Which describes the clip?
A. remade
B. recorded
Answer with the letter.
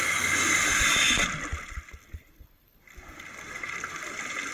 B